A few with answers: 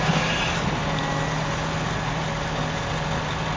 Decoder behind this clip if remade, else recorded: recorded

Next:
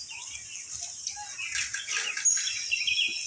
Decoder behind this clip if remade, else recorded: recorded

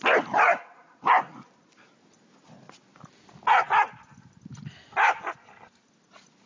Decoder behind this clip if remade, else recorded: recorded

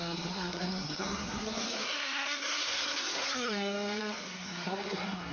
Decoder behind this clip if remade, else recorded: remade, codec, SNAC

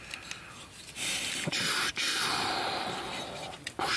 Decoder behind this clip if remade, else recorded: recorded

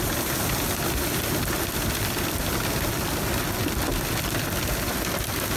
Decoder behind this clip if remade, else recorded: recorded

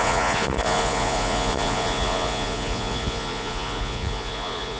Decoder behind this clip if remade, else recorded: remade, vocoder, Vocos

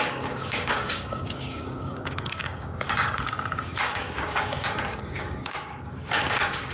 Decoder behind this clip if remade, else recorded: remade, codec, DAC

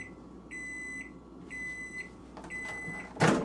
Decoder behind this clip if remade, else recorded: recorded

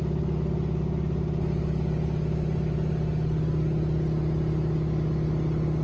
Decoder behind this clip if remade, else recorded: recorded